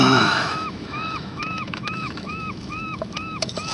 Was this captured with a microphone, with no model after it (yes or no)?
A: no